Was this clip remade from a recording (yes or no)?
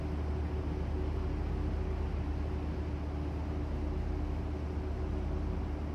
no